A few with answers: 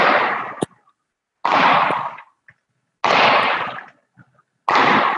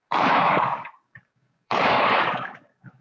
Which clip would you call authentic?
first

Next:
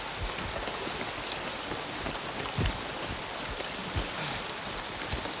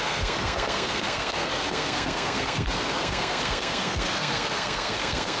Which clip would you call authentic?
first